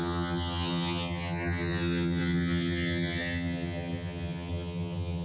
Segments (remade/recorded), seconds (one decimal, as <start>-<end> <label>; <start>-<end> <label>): 0.0-5.2 remade